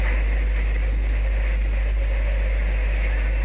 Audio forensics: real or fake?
real